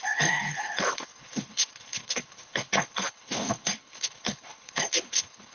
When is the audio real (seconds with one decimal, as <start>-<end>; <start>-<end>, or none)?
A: none